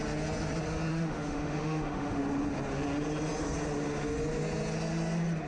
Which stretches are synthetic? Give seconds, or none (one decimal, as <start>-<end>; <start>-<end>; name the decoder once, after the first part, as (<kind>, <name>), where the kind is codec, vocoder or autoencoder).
0.9-2.2 (autoencoder, DAC-VAE)